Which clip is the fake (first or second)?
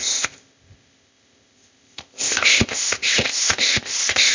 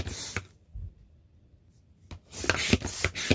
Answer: first